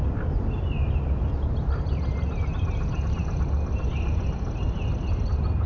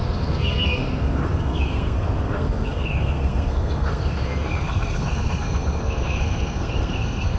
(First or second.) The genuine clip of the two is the first